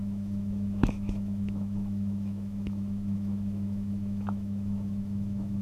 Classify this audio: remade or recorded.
remade